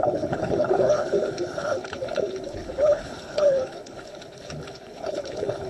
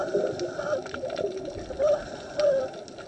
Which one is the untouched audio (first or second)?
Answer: second